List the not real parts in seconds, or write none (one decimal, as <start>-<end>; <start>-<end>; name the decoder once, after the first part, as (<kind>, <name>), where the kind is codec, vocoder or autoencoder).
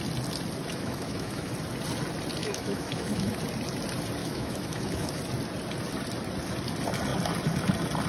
0.7-1.5 (autoencoder, DAC-VAE); 2.4-3.4; 4.2-5.2